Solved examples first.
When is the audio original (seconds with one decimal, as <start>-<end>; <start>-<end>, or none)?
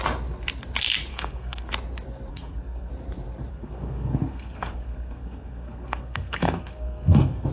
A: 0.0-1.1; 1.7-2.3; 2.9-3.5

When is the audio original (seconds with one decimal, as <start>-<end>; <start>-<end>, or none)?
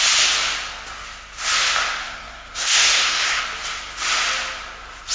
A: 0.0-2.0; 3.4-5.1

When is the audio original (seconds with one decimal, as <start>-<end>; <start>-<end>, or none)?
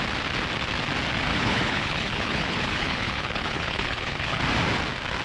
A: 0.0-1.3; 4.4-5.2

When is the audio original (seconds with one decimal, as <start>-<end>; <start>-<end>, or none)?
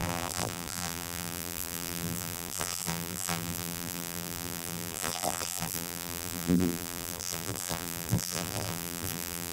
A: none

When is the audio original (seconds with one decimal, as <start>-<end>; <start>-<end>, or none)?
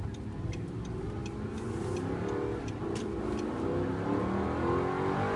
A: 0.0-5.4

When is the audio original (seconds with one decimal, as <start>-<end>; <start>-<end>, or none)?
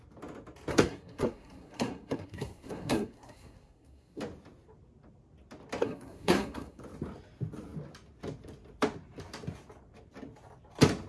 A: 0.0-0.7; 4.2-5.8; 6.8-11.1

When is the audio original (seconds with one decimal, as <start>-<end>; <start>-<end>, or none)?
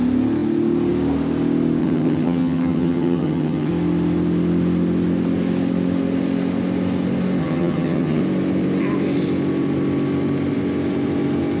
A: 0.0-1.8; 3.7-7.4; 8.2-11.6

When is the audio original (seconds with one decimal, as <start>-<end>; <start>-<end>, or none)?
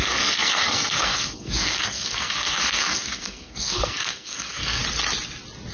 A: 4.8-5.7